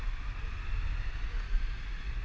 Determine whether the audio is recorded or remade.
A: recorded